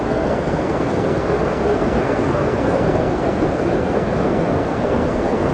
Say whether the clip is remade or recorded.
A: remade